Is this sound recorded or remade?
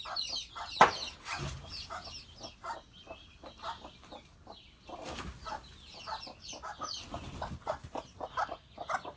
recorded